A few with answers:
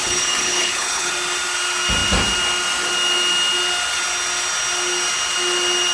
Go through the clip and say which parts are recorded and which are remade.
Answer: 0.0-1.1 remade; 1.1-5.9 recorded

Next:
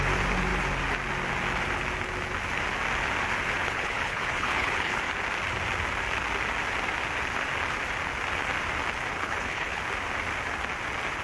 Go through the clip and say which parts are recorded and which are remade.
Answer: 0.0-3.6 recorded; 3.6-5.0 remade; 5.0-9.1 recorded; 9.1-9.8 remade; 9.8-11.2 recorded